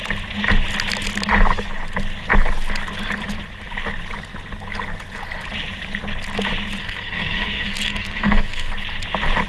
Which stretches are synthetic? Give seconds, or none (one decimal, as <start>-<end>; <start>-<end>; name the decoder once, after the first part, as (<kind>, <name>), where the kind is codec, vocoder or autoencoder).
6.8-8.7 (codec, SNAC)